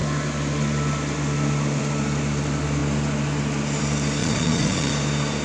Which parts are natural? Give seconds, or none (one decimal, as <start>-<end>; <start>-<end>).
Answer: 0.0-4.2; 4.9-5.4